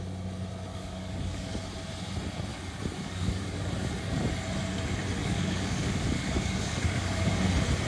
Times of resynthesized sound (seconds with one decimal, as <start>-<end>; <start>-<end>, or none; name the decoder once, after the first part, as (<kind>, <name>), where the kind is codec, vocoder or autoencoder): 0.7-1.6 (codec, DAC); 2.5-3.9; 5.2-7.4